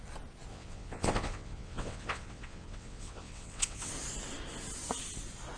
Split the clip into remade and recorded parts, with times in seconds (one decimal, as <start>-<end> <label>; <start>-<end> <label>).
0.0-0.5 recorded; 0.5-3.9 remade; 3.9-5.6 recorded